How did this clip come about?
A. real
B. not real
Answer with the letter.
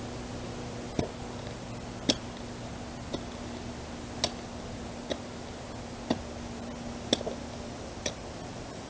A